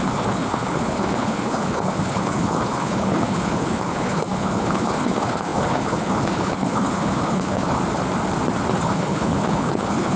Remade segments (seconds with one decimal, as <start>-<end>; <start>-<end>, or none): 0.0-7.8; 8.7-10.2